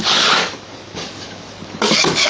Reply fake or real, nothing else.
fake